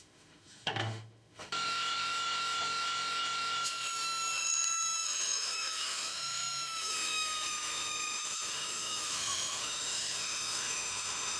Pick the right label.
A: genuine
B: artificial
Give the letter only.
B